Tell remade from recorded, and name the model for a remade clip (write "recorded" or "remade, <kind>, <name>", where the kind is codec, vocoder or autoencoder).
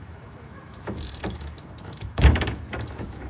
remade, autoencoder, DAC-VAE